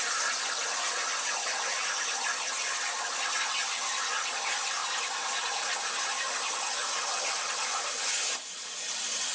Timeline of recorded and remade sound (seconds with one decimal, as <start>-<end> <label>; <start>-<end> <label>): 0.0-9.3 recorded